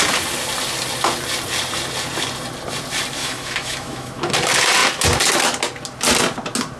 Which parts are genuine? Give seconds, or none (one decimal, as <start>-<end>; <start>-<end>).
0.0-3.2; 4.3-6.8